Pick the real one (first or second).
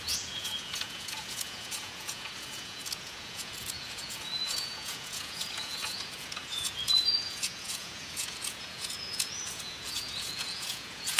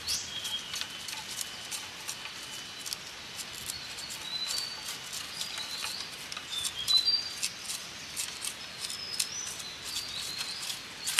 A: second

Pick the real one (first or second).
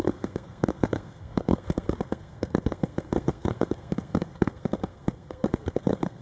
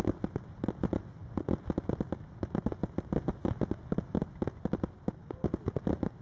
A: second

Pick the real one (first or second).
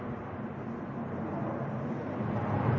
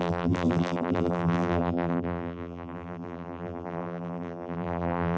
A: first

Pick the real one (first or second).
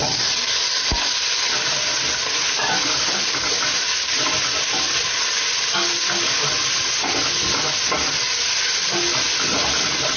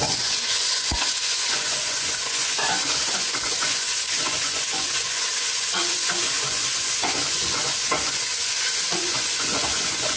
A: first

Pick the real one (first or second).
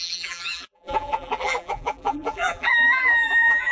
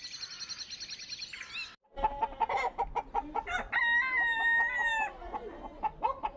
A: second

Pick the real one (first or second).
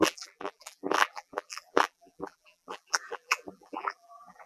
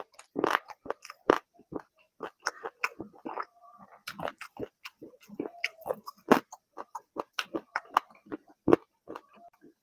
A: second